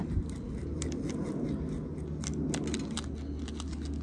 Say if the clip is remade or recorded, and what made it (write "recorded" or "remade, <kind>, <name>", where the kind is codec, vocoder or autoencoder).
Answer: recorded